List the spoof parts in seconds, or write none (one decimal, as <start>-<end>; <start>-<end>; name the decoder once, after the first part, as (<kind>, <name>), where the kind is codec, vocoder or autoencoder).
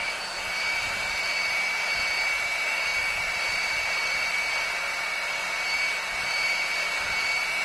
0.0-7.6 (vocoder, BigVGAN v2)